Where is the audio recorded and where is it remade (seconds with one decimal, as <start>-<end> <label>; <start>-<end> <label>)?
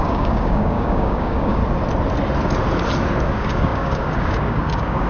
0.0-1.6 remade; 1.6-3.2 recorded; 3.2-5.1 remade